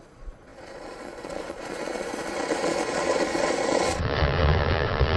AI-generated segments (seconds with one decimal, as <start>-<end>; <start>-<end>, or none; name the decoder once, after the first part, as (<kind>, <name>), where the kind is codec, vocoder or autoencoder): 0.0-5.2 (vocoder, Vocos)